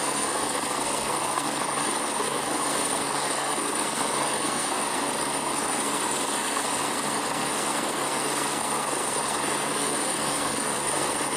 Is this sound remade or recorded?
remade